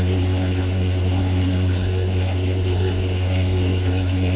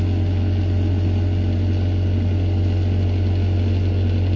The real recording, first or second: second